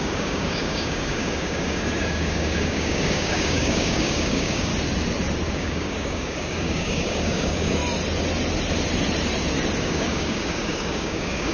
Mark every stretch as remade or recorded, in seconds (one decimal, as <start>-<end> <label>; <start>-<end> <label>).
0.0-4.7 remade; 4.7-5.5 recorded; 5.5-7.8 remade; 7.8-9.8 recorded; 9.8-11.5 remade